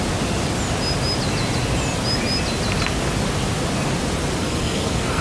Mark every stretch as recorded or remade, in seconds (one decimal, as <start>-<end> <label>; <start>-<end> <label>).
0.0-4.4 recorded; 4.4-5.2 remade